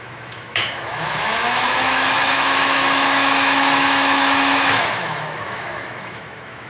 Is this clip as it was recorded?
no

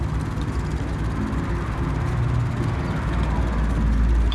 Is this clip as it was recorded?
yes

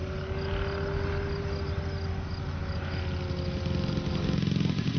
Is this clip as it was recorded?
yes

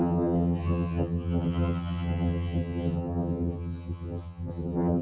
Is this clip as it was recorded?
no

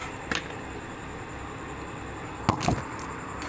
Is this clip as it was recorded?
yes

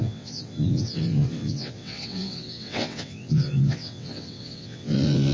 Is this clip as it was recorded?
no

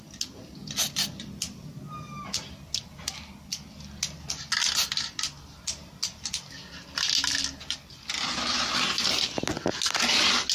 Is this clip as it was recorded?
yes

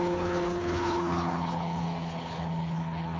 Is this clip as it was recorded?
no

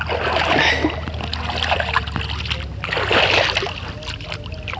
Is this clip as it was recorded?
yes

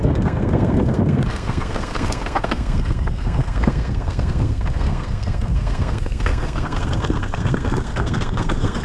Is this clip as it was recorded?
no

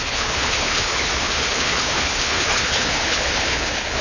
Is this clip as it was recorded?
no